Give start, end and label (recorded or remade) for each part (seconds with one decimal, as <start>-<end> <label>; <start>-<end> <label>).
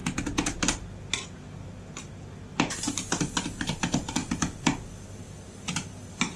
0.0-6.4 recorded